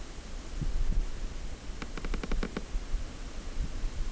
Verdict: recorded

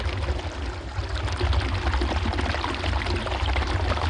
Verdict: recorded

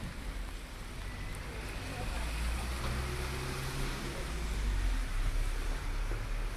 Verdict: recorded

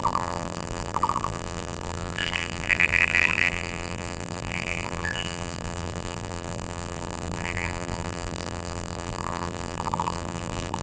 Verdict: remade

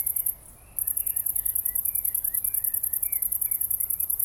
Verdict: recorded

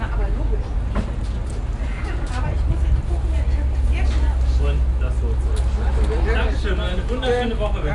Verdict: recorded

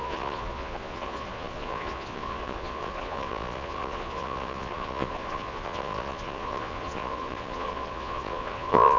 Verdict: remade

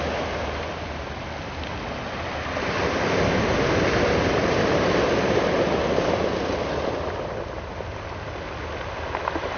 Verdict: recorded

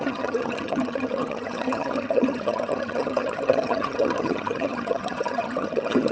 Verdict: remade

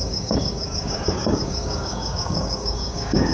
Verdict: remade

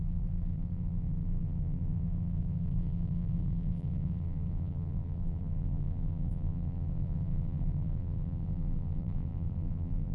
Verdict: remade